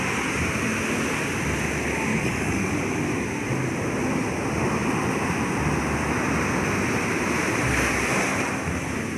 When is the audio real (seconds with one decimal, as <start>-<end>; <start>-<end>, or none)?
0.0-2.1; 2.7-9.2